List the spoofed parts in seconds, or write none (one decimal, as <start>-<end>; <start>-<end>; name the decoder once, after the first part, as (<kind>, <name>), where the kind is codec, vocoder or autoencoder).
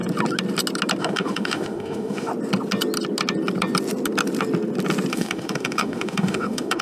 1.0-2.3 (autoencoder, DAC-VAE); 5.1-6.8